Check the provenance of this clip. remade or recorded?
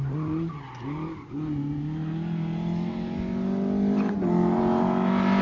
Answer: recorded